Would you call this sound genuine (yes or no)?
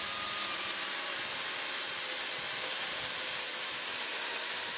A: yes